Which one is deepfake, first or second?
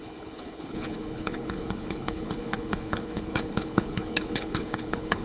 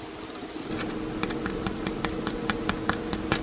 first